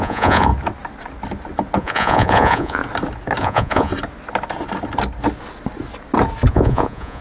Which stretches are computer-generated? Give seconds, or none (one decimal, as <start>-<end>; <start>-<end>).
0.0-0.5; 1.8-2.8; 3.4-3.9; 6.5-7.2